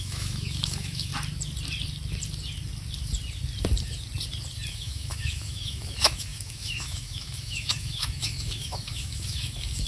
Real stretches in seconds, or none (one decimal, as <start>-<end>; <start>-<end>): 1.1-4.7